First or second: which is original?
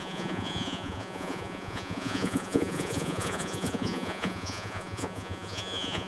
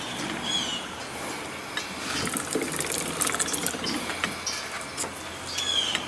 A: second